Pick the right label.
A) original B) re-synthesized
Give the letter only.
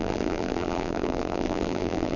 B